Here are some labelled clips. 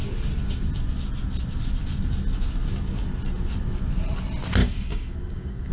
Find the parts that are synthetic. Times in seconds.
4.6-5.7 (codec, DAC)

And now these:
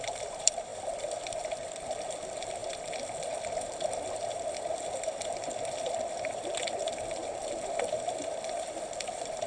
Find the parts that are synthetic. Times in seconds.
0.0-2.6 (vocoder, BigVGAN v2); 7.7-9.5

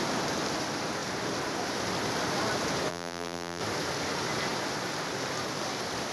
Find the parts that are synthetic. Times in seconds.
2.9-3.6 (vocoder, BigVGAN v2)

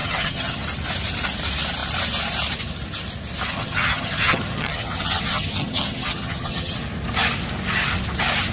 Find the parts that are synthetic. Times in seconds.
0.0-0.6 (vocoder, HiFi-GAN); 3.5-6.8